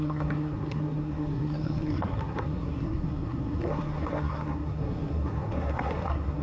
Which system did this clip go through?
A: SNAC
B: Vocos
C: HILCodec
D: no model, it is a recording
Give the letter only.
A